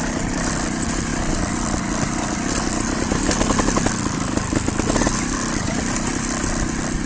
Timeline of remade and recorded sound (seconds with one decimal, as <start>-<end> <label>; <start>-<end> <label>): 0.0-7.1 recorded